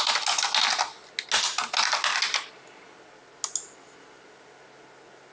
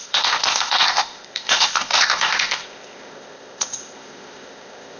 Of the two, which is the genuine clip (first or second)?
first